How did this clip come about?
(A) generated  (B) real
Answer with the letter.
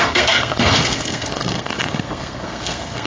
A